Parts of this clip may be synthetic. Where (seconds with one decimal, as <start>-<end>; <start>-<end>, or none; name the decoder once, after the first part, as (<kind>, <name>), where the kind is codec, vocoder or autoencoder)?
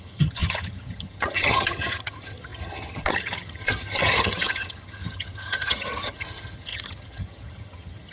0.0-8.1 (vocoder, HiFi-GAN)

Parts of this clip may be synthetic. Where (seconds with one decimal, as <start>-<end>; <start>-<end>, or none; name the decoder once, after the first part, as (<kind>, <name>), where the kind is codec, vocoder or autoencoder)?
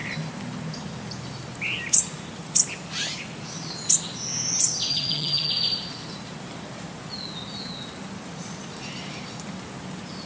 4.9-5.5 (vocoder, HiFi-GAN)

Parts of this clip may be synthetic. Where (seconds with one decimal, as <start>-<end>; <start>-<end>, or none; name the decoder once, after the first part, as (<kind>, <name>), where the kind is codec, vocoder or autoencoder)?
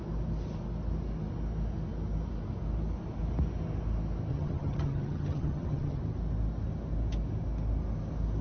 4.3-6.0 (vocoder, HiFi-GAN)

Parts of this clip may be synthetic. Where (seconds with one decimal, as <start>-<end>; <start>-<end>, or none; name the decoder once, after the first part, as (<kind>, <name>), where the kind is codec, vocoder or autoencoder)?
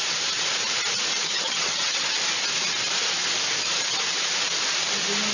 1.2-2.2 (vocoder, HiFi-GAN)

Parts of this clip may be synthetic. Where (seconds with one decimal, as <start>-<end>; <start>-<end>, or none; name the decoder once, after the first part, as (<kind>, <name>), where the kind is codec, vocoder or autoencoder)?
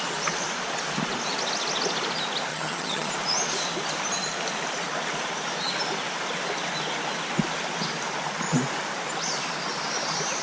2.5-3.1 (vocoder, HiFi-GAN)